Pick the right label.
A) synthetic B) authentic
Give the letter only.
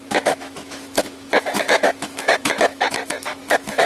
A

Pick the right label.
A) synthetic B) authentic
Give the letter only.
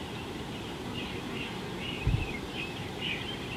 A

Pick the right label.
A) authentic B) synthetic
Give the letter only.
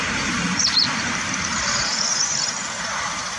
B